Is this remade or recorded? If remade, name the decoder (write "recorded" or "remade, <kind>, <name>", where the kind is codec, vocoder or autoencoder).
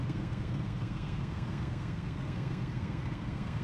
remade, codec, SNAC